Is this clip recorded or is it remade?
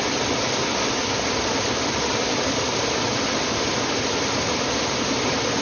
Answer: recorded